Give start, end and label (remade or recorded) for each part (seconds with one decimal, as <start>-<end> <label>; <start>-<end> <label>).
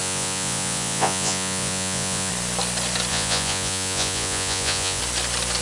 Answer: 0.0-2.3 remade; 2.3-3.1 recorded; 3.1-5.0 remade; 5.0-5.6 recorded